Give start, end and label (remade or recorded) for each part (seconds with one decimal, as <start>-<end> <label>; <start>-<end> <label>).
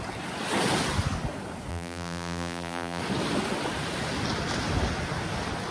0.0-1.7 recorded; 1.7-3.0 remade; 3.0-5.7 recorded